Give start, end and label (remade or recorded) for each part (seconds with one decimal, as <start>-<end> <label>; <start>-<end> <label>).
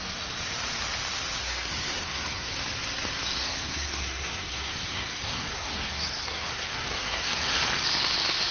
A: 0.0-1.4 recorded; 1.4-2.5 remade; 2.5-3.4 recorded; 3.4-7.6 remade; 7.6-8.5 recorded